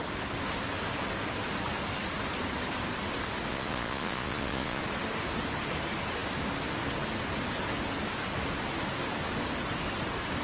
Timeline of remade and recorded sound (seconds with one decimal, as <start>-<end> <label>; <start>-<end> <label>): 0.0-3.5 recorded; 3.5-4.8 remade; 4.8-10.4 recorded